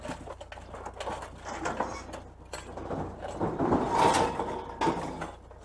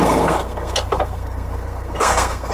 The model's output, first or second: second